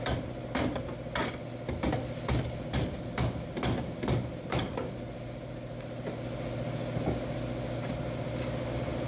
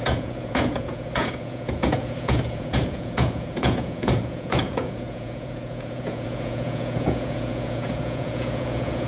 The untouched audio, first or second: first